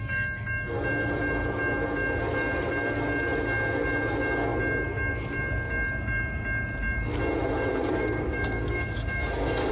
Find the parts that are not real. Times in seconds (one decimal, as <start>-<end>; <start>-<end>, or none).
7.8-9.7